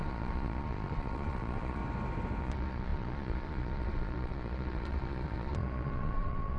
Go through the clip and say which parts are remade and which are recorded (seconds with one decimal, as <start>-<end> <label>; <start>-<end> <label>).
0.0-1.8 remade; 1.8-2.4 recorded; 2.4-6.6 remade

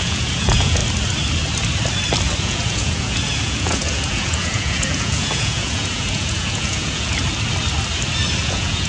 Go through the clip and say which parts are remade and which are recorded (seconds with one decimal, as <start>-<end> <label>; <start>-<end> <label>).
0.0-0.8 remade; 0.8-2.4 recorded; 2.4-7.2 remade; 7.2-8.4 recorded; 8.4-8.9 remade

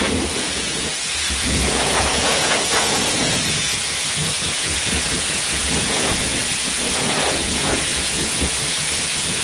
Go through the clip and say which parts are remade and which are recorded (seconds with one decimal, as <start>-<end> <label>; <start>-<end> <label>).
0.0-9.4 remade

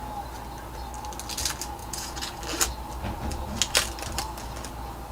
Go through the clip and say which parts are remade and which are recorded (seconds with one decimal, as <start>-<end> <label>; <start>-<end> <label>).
0.0-1.8 recorded; 1.8-2.4 remade; 2.4-5.1 recorded

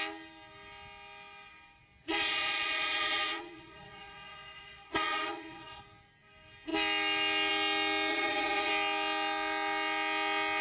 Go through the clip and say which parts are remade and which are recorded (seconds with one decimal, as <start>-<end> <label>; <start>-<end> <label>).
0.0-2.0 recorded; 2.0-5.8 remade; 5.8-8.1 recorded; 8.1-8.7 remade; 8.7-10.6 recorded

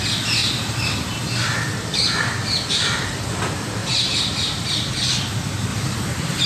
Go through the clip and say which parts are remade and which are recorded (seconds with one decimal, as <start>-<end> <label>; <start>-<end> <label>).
0.0-0.4 recorded; 0.4-3.1 remade; 3.1-3.8 recorded; 3.8-4.9 remade; 4.9-5.7 recorded; 5.7-6.5 remade

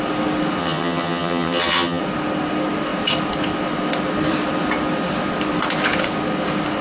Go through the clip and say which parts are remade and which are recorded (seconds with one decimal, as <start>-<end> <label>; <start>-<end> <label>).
0.0-0.6 recorded; 0.6-2.0 remade; 2.0-6.8 recorded